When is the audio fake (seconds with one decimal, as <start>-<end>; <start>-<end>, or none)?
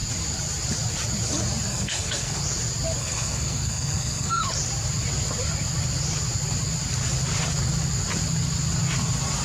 1.7-2.4; 3.0-4.4